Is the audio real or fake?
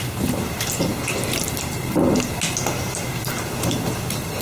real